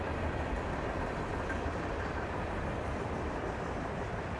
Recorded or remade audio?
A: remade